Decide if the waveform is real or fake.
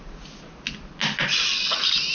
real